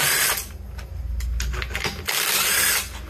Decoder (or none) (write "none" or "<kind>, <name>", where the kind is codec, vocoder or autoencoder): none